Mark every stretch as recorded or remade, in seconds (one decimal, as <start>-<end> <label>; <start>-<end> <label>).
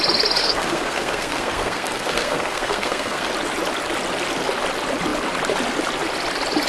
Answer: 0.0-0.4 recorded; 0.4-3.3 remade; 3.3-6.7 recorded